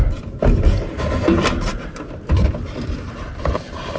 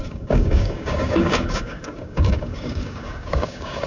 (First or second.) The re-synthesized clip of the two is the second